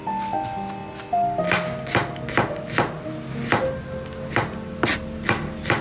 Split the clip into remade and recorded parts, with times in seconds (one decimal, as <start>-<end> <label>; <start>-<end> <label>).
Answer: 0.0-5.8 recorded